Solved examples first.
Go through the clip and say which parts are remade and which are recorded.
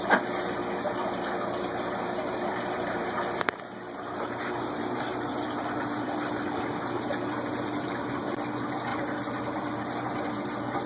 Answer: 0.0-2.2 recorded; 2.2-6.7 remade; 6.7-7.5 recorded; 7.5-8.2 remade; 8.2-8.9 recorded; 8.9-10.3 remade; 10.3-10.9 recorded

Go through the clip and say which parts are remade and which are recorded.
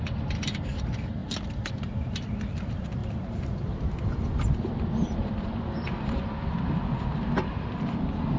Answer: 0.0-8.4 remade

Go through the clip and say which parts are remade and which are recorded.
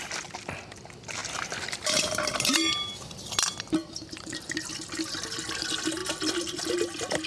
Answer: 0.0-1.2 recorded; 1.2-2.3 remade; 2.3-3.8 recorded; 3.8-4.7 remade; 4.7-6.0 recorded; 6.0-6.7 remade; 6.7-7.3 recorded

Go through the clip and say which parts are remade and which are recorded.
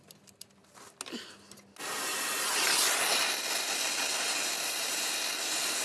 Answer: 0.0-5.8 recorded